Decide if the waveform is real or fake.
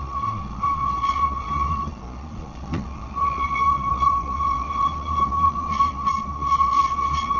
fake